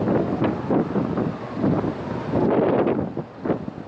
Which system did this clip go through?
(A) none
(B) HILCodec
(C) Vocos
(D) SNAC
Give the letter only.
A